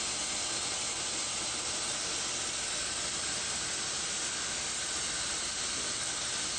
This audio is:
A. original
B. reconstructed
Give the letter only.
A